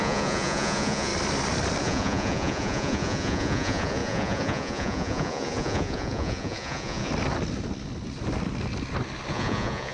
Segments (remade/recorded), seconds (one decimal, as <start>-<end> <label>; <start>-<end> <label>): 0.0-1.1 remade; 1.1-1.8 recorded; 1.8-7.1 remade; 7.1-9.3 recorded; 9.3-9.9 remade